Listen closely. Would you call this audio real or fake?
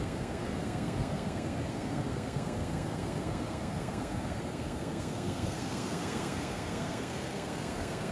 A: fake